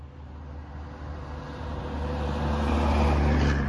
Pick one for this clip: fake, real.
real